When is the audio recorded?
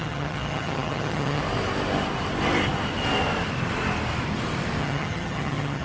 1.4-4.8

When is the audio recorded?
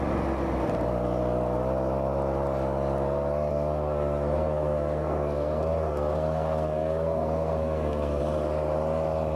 0.0-3.5; 8.2-9.4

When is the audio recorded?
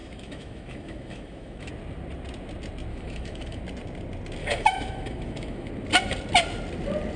1.7-2.9; 3.6-4.4; 5.7-7.2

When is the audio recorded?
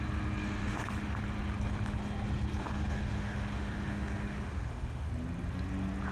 0.0-0.6; 1.2-2.6; 5.1-6.1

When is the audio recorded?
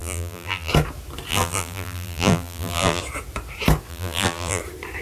0.7-1.3; 3.0-3.9; 4.6-5.0